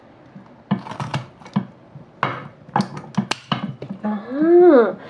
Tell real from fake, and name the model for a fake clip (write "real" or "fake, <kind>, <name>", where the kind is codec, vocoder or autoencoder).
real